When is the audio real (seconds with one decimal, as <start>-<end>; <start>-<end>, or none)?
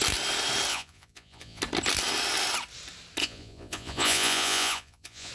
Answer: 0.0-0.7; 1.6-3.2